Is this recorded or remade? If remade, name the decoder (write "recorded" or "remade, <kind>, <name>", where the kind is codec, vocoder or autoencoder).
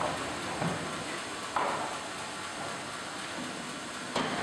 recorded